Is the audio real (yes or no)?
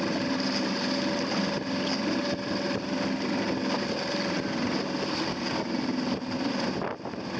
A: yes